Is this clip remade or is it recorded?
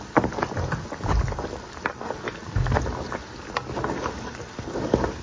recorded